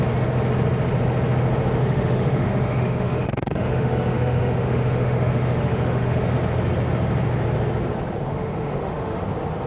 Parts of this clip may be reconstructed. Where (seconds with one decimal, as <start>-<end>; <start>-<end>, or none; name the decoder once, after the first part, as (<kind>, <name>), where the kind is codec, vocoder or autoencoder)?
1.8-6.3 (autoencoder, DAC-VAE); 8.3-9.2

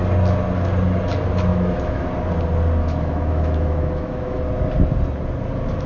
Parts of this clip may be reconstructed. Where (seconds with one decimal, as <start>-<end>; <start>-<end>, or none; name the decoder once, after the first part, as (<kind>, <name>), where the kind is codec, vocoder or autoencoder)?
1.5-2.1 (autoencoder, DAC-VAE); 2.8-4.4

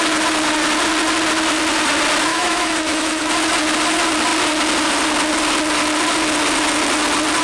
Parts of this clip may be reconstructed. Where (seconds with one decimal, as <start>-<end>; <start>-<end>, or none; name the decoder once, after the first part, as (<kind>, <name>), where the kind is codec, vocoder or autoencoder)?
2.3-3.3 (autoencoder, DAC-VAE)

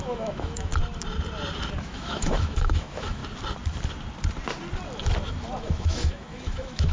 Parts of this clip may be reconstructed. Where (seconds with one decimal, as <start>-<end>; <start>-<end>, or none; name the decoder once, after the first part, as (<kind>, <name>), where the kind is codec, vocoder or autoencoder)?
0.0-0.7 (autoencoder, DAC-VAE); 1.8-3.2; 5.6-6.9

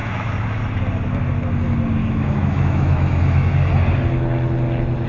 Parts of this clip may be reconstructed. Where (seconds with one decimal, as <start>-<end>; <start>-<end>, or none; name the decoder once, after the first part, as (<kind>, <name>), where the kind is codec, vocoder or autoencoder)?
0.0-0.6 (autoencoder, DAC-VAE); 2.0-3.6